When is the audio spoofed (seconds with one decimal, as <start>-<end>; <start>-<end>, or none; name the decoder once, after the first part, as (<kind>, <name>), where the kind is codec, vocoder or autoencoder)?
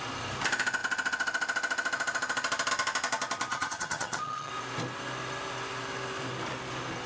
3.5-4.5 (vocoder, HiFi-GAN)